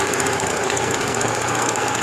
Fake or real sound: fake